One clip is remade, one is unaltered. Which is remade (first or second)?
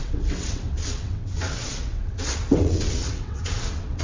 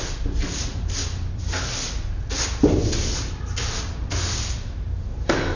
first